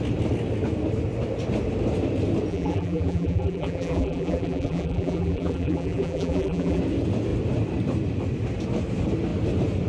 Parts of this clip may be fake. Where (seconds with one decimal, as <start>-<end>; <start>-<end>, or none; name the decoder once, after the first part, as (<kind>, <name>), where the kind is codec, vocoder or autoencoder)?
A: 2.5-6.8 (vocoder, BigVGAN v2)